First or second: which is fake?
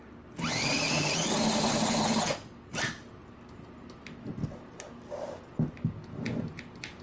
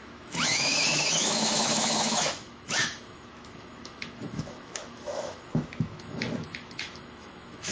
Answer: second